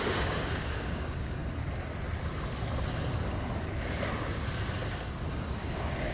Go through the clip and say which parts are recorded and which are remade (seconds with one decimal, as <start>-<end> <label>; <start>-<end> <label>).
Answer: 0.0-1.4 remade; 1.4-5.1 recorded; 5.1-6.1 remade